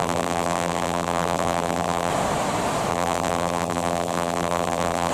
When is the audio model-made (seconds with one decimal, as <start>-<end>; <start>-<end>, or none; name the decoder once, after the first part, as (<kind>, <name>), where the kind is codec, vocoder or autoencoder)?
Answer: 0.0-2.1 (vocoder, BigVGAN v2); 2.9-5.1